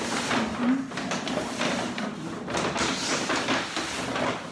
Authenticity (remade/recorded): recorded